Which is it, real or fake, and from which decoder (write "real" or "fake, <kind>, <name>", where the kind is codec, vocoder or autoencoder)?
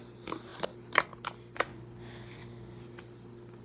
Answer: real